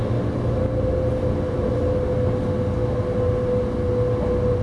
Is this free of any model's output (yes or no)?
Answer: yes